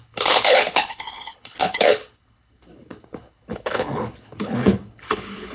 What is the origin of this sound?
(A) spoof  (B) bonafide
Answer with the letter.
A